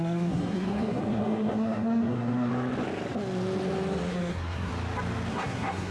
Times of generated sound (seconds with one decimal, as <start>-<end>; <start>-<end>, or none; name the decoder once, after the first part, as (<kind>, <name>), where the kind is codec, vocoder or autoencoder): 0.0-2.5 (codec, SNAC); 4.1-4.7; 5.3-5.9